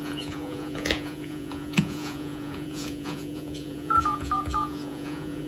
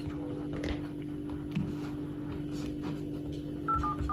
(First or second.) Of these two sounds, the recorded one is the second